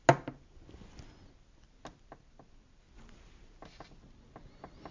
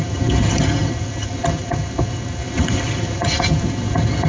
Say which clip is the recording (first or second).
first